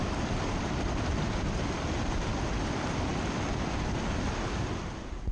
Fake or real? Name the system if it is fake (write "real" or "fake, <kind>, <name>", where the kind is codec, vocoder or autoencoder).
real